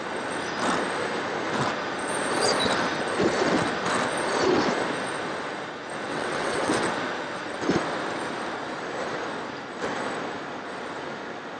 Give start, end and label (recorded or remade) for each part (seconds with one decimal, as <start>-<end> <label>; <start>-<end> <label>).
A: 0.0-6.1 recorded; 6.1-6.9 remade; 6.9-11.6 recorded